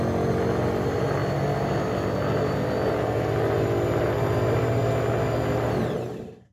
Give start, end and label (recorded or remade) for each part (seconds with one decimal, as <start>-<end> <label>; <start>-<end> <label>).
0.0-6.5 recorded